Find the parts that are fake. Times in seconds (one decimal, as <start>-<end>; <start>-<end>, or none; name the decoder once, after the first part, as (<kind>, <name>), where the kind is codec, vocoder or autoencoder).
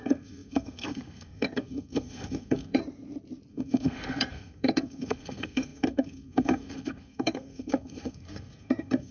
0.0-2.8 (codec, SNAC); 3.5-9.1